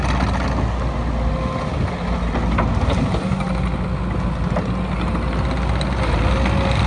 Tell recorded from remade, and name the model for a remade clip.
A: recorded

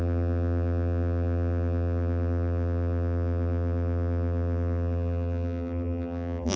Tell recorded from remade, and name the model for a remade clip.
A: remade, vocoder, BigVGAN v2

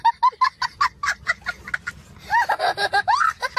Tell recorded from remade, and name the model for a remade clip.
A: recorded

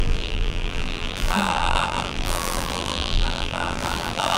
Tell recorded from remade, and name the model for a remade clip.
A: remade, vocoder, BigVGAN v2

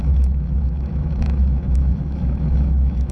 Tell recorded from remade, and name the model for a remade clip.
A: remade, autoencoder, DAC-VAE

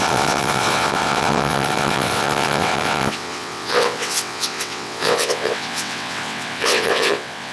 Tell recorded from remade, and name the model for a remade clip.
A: remade, vocoder, WaveNeXt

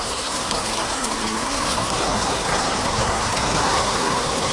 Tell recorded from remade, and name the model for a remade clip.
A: remade, codec, SNAC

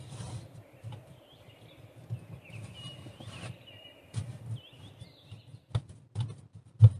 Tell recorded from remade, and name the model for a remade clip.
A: recorded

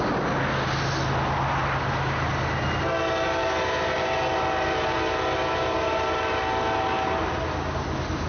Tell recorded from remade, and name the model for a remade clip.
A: recorded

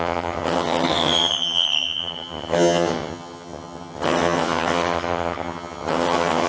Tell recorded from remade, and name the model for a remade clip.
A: remade, vocoder, HiFi-GAN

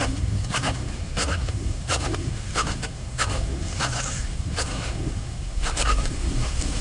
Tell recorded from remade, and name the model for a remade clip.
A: remade, codec, SNAC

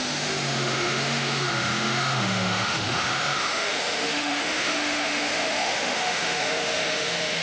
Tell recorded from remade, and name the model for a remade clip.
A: remade, autoencoder, DAC-VAE